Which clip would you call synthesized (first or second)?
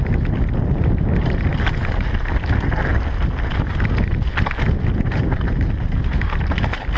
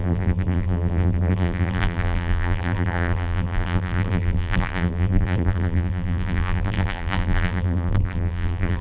second